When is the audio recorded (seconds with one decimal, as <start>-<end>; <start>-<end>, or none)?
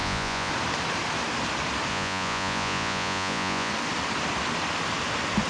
0.5-1.9; 3.7-5.5